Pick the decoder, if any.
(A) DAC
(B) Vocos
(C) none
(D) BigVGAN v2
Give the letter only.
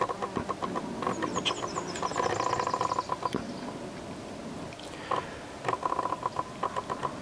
C